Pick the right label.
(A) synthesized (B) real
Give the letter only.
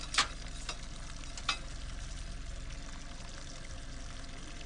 B